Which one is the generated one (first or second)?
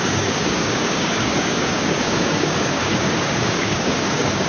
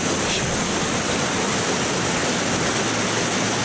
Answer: first